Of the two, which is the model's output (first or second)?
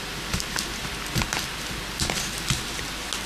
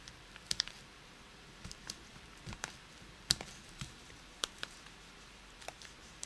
second